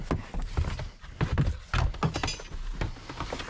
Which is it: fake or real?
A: real